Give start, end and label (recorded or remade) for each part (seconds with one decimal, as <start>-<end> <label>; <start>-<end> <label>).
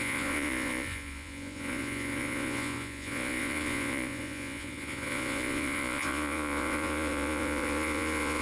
0.0-8.4 remade